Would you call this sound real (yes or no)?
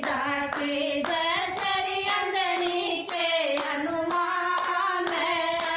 yes